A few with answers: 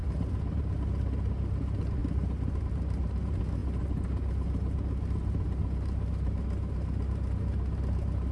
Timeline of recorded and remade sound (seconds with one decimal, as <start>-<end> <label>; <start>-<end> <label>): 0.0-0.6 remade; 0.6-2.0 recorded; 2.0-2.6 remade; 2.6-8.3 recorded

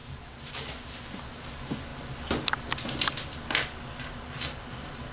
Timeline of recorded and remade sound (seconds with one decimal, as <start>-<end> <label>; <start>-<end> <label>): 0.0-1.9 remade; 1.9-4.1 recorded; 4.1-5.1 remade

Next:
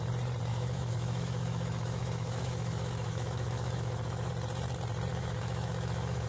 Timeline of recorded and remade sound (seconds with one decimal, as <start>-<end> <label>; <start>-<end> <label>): 0.0-0.5 recorded; 0.5-4.3 remade; 4.3-5.1 recorded; 5.1-6.3 remade